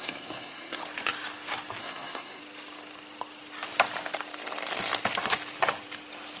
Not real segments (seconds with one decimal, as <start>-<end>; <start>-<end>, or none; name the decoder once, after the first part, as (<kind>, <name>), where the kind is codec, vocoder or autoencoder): 0.0-0.8 (codec, SNAC); 1.8-2.4